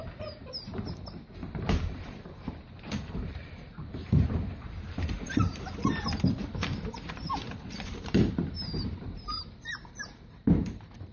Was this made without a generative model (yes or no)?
no